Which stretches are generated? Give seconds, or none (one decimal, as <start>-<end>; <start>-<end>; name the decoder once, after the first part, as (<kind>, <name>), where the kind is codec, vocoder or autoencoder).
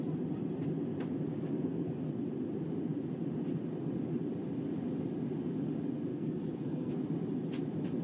1.3-1.9 (codec, SNAC); 6.1-6.9